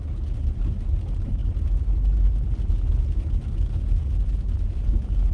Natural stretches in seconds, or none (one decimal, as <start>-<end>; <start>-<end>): 0.0-5.3